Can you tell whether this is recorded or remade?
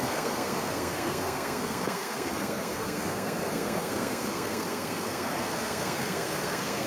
remade